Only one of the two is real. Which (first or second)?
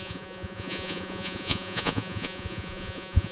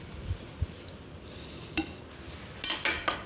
second